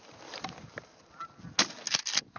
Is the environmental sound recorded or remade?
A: recorded